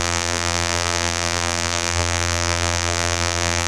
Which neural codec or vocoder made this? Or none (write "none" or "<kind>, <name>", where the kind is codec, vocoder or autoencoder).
vocoder, BigVGAN v2